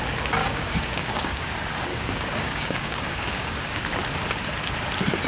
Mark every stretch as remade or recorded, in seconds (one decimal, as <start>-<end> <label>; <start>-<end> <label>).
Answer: 0.0-0.4 recorded; 0.4-1.5 remade; 1.5-1.9 recorded; 1.9-3.8 remade; 3.8-5.3 recorded